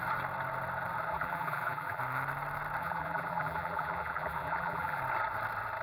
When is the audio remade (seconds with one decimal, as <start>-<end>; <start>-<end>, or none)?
1.1-2.0; 2.8-5.0